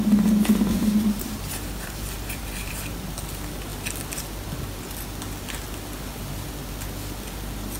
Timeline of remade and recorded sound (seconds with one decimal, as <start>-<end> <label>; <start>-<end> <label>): 0.0-0.8 recorded; 0.8-3.0 remade; 3.0-7.8 recorded